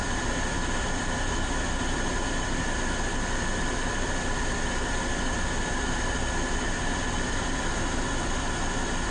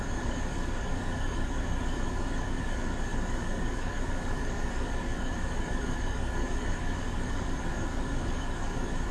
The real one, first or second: first